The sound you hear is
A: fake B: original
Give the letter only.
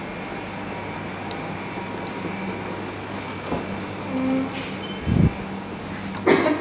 B